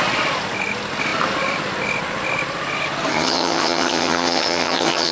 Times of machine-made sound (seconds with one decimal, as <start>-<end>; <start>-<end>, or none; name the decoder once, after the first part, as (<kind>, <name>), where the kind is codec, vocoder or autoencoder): 3.1-5.1 (vocoder, HiFi-GAN)